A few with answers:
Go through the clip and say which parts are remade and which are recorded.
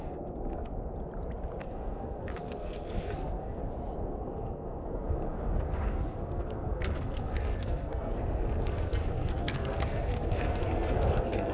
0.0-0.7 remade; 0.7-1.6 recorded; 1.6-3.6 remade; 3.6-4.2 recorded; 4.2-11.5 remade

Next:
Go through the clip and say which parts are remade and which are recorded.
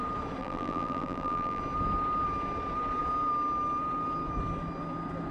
0.0-0.4 recorded; 0.4-1.6 remade; 1.6-5.3 recorded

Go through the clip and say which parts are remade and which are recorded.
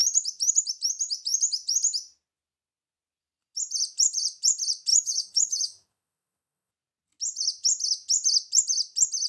0.0-4.9 recorded; 4.9-6.7 remade; 6.7-9.3 recorded